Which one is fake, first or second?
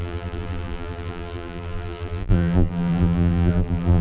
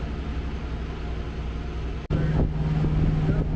first